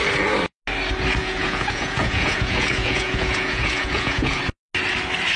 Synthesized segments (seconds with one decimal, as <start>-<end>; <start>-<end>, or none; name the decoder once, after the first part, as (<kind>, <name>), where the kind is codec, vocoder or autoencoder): 1.2-4.4 (vocoder, Vocos)